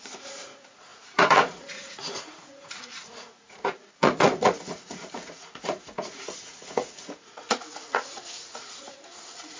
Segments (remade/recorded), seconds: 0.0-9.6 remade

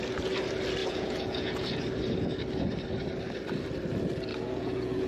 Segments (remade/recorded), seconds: 0.0-0.8 recorded; 0.8-1.8 remade; 1.8-4.3 recorded; 4.3-5.1 remade

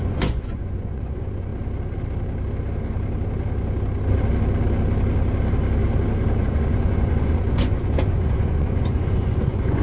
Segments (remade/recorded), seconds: 0.0-1.5 remade; 1.5-6.4 recorded; 6.4-9.8 remade

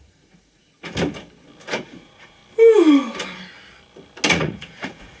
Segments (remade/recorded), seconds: 0.0-0.6 remade; 0.6-1.8 recorded; 1.8-2.4 remade; 2.4-4.3 recorded; 4.3-5.2 remade

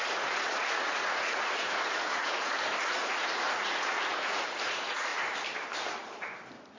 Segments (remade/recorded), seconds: 0.0-2.5 remade; 2.5-3.0 recorded; 3.0-5.1 remade; 5.1-6.8 recorded

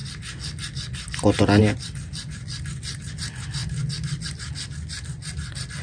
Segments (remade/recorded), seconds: 0.0-5.8 recorded

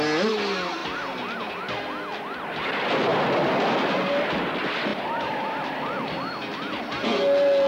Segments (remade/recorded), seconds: 0.0-7.7 recorded